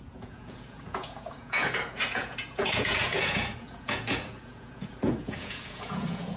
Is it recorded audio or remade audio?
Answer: remade